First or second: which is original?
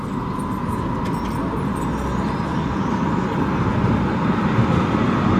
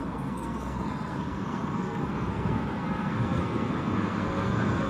first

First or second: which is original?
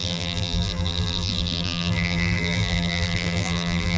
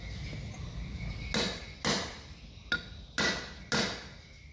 second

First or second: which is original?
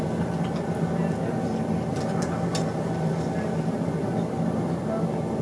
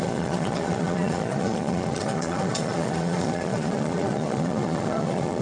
first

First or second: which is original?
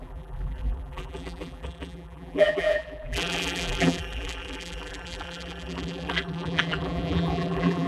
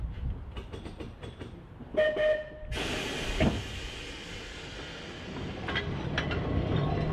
second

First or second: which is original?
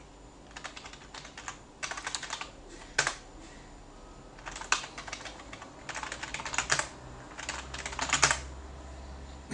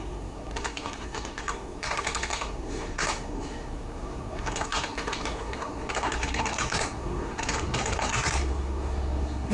first